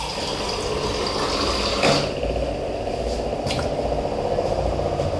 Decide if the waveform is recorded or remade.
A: recorded